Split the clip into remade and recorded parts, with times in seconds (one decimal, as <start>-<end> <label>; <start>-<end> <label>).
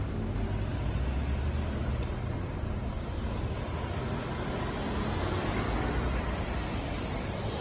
0.0-7.6 recorded